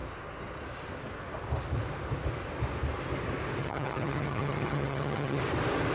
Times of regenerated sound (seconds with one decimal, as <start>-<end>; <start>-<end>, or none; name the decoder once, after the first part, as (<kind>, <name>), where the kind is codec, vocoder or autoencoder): 3.6-5.4 (vocoder, HiFi-GAN)